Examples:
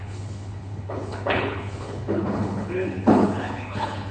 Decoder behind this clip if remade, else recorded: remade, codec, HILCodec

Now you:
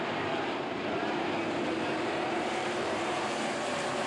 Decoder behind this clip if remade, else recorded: remade, vocoder, BigVGAN v2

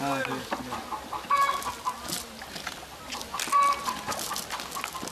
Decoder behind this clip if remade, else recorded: recorded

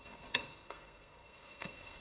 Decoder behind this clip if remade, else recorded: remade, codec, SNAC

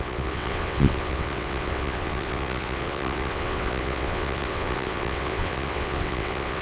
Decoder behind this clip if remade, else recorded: remade, vocoder, WaveNeXt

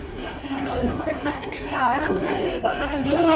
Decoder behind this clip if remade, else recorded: remade, codec, SNAC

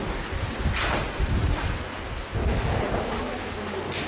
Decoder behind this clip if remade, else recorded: recorded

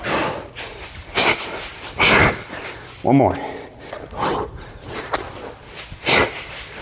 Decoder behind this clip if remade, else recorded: remade, vocoder, BigVGAN v2